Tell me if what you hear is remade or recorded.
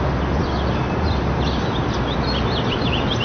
recorded